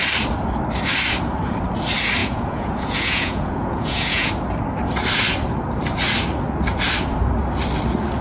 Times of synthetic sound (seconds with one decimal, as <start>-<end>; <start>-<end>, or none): 2.2-4.3